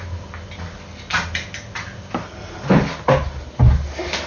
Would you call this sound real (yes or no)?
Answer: yes